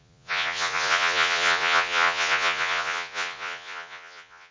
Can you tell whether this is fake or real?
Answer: fake